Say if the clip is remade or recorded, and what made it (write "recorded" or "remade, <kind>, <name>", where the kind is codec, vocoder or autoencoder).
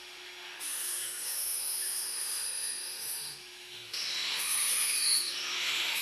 remade, autoencoder, DAC-VAE